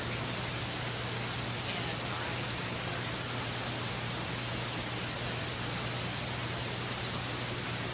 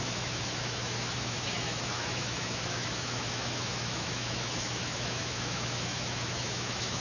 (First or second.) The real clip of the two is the first